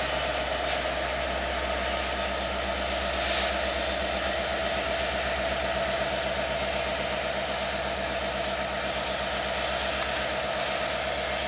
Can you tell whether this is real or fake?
real